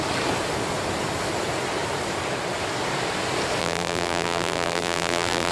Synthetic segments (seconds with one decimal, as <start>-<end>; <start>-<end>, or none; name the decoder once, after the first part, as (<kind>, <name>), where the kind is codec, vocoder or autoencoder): 3.6-5.5 (vocoder, BigVGAN v2)